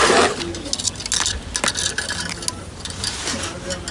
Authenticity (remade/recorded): recorded